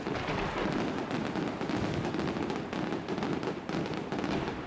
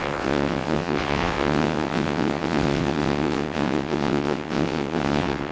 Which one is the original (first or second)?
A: first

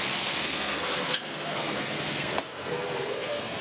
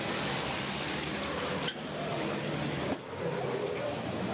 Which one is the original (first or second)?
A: second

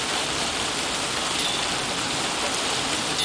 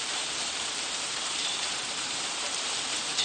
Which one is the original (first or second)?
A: first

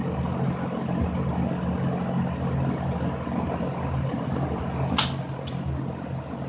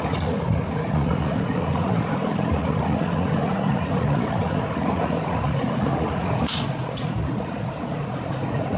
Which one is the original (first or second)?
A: first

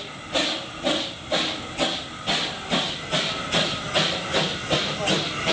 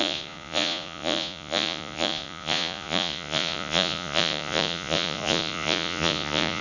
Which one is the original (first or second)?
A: first